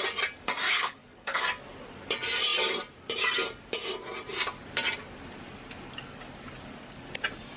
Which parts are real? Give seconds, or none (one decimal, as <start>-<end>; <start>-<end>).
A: 0.0-0.7; 1.4-7.6